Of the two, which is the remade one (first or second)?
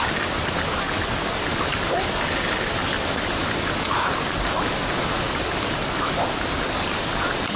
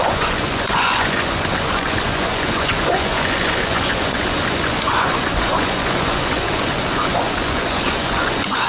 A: second